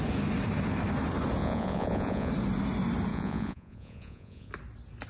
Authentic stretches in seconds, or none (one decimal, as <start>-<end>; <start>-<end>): 0.0-1.4; 2.3-3.1; 4.5-5.1